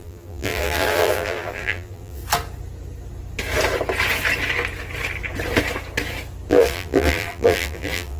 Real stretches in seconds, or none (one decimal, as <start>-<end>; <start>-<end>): 2.2-6.5